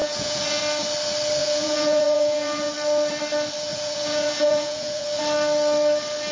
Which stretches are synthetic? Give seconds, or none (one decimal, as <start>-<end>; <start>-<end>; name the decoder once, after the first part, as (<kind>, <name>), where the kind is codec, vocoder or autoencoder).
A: 0.0-0.6 (vocoder, Vocos); 1.4-2.7; 3.7-5.2